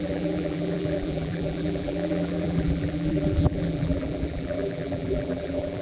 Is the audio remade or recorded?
remade